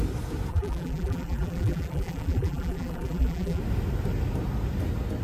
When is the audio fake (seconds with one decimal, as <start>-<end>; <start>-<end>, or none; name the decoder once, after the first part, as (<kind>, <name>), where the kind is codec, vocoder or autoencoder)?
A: 0.5-3.6 (vocoder, BigVGAN v2)